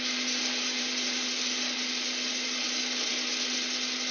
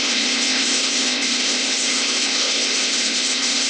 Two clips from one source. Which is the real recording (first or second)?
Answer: first